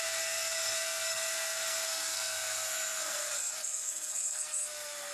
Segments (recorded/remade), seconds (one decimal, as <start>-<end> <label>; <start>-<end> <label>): 0.0-5.1 remade